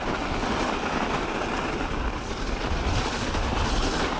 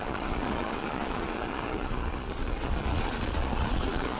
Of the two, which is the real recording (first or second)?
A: first